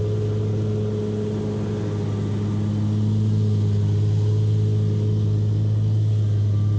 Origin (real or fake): real